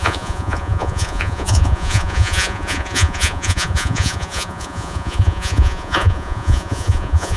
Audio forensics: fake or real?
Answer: fake